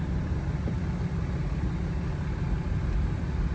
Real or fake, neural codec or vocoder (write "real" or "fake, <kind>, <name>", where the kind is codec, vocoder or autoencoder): real